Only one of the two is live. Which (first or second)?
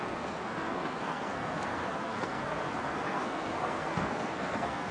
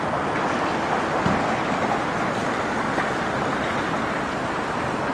second